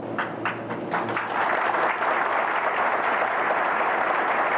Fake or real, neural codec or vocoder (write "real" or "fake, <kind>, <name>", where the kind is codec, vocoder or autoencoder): real